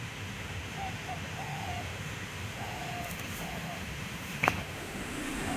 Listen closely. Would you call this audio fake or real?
fake